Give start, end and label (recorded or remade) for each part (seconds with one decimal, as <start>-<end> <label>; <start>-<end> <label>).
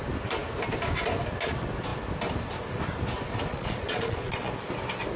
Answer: 0.0-3.5 recorded; 3.5-4.5 remade; 4.5-5.2 recorded